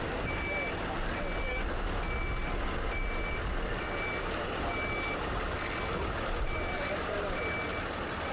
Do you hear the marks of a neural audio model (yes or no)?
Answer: no